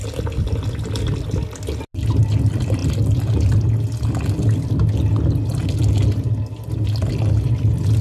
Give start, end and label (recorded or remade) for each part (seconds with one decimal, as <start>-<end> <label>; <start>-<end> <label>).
0.0-8.0 recorded